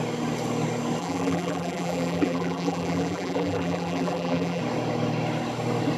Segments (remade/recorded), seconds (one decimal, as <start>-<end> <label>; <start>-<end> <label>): 0.0-1.0 recorded; 1.0-4.6 remade; 4.6-6.0 recorded